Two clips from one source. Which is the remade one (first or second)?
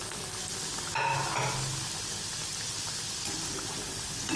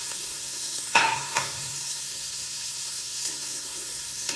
second